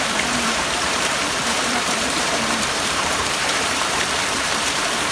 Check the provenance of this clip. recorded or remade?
remade